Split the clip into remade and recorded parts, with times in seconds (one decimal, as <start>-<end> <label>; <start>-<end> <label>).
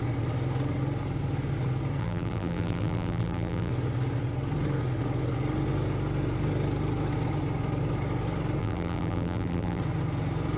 0.0-2.0 recorded; 2.0-3.7 remade; 3.7-8.6 recorded; 8.6-9.8 remade; 9.8-10.6 recorded